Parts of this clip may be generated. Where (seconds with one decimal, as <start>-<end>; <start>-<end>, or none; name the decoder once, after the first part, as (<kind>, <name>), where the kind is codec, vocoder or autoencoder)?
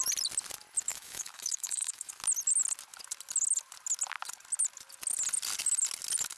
0.9-2.1 (autoencoder, DAC-VAE)